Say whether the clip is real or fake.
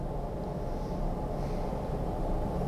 real